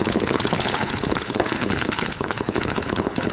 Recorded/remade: remade